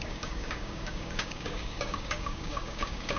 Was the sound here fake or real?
fake